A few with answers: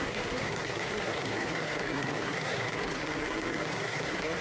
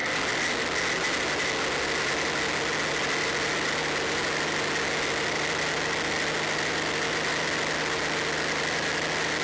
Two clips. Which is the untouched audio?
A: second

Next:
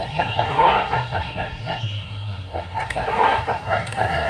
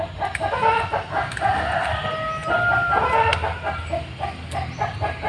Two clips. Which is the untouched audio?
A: second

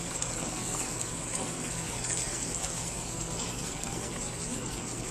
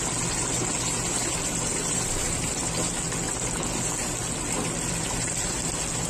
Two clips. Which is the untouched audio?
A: second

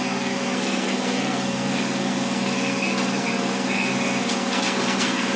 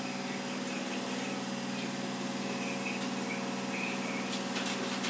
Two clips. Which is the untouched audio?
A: second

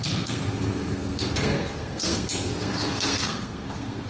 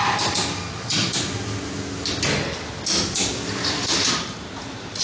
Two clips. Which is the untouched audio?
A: second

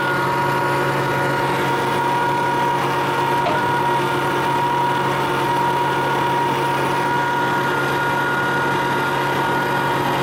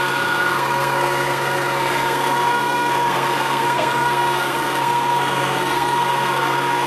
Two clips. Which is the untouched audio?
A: first